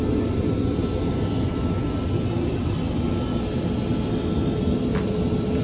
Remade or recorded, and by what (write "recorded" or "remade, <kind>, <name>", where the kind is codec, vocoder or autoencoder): recorded